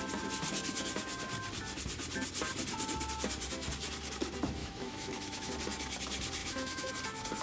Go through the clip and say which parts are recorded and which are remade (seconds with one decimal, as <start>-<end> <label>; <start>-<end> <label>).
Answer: 0.0-4.6 recorded; 4.6-5.5 remade; 5.5-6.4 recorded; 6.4-6.9 remade; 6.9-7.4 recorded